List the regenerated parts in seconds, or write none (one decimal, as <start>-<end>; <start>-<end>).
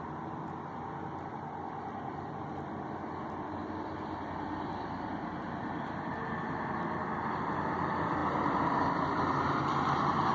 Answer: none